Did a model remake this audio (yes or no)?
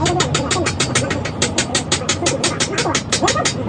no